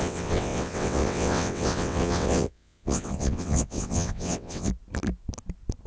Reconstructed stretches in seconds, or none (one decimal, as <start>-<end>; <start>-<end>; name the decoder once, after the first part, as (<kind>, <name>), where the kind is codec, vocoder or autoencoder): 0.0-4.7 (vocoder, WaveNeXt)